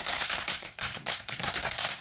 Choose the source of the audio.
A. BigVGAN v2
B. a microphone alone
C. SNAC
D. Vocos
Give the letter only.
C